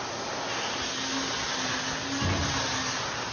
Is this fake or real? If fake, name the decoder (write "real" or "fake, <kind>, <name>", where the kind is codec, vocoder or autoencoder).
real